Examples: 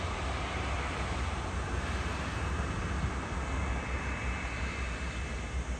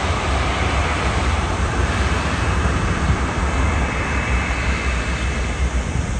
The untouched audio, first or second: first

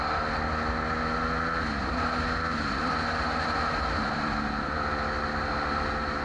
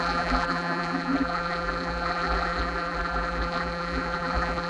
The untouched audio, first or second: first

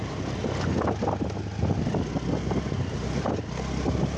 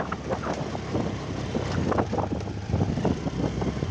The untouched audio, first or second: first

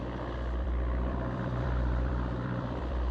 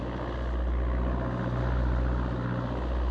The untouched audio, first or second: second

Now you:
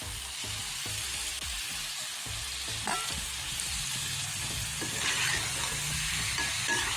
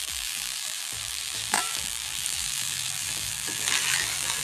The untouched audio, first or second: first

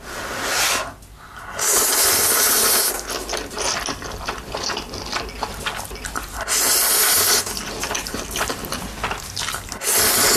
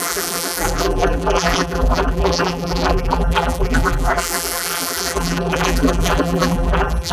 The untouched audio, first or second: first